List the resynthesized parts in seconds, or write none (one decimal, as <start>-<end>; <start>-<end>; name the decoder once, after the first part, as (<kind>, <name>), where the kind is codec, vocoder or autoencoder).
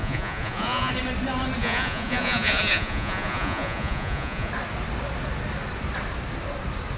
0.0-0.9 (vocoder, Vocos); 1.6-4.5